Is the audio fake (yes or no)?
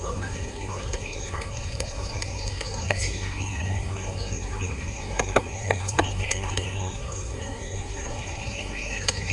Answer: yes